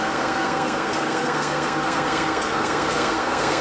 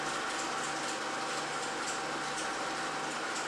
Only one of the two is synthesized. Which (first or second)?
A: first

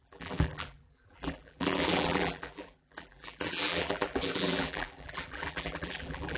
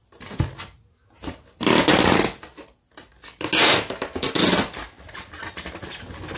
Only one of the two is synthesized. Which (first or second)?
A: first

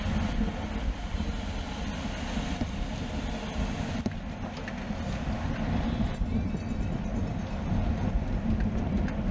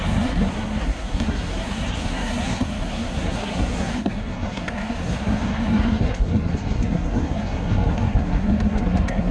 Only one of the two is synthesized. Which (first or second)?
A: second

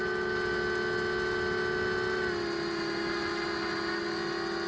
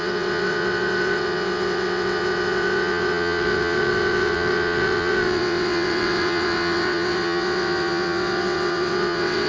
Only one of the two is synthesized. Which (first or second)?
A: second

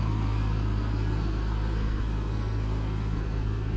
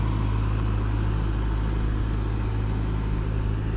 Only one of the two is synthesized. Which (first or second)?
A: first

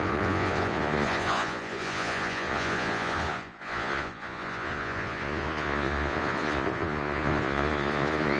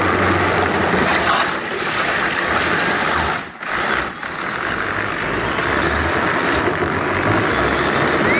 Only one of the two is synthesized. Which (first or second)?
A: first